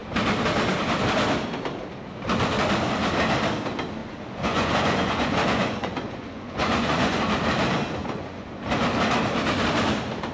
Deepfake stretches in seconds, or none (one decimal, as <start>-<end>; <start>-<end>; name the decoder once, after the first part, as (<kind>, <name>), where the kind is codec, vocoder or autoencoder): 4.0-7.2 (vocoder, Vocos); 8.0-8.6